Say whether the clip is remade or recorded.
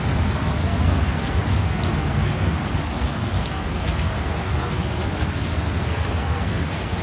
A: remade